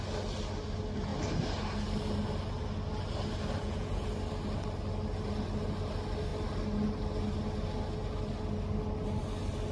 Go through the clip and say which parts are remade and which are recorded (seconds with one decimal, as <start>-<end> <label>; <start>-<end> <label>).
0.0-3.6 recorded; 3.6-4.1 remade; 4.1-9.7 recorded